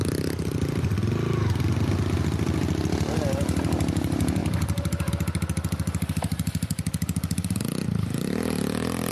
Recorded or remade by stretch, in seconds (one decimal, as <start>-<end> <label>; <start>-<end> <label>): 0.0-9.1 recorded